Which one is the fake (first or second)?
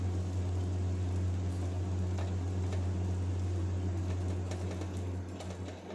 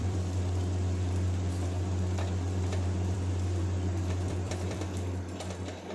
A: second